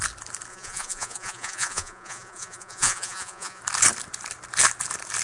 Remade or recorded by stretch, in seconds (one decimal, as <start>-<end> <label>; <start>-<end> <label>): 0.0-0.5 recorded; 0.5-3.6 remade; 3.6-5.2 recorded